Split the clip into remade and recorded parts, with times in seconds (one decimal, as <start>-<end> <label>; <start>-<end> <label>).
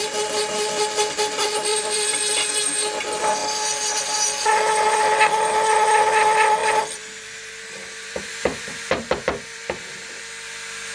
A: 0.0-1.7 recorded; 1.7-2.2 remade; 2.2-6.6 recorded; 6.6-10.2 remade; 10.2-10.9 recorded